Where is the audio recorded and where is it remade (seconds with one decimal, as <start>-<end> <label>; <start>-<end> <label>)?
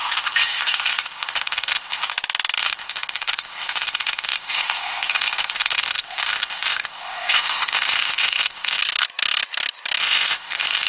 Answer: 0.0-2.1 remade; 2.1-2.6 recorded; 2.6-8.8 remade; 8.8-10.0 recorded; 10.0-10.9 remade